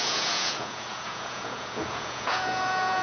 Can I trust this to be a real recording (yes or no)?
no